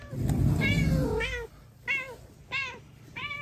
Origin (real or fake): real